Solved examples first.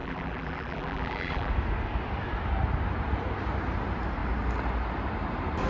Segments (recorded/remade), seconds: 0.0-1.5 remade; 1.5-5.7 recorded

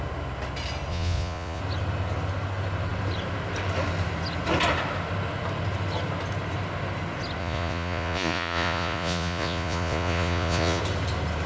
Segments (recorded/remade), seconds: 0.0-0.9 recorded; 0.9-1.6 remade; 1.6-7.4 recorded; 7.4-10.8 remade; 10.8-11.5 recorded